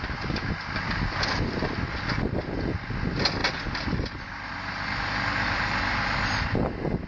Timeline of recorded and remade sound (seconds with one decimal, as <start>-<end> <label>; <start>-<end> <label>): 0.0-7.1 recorded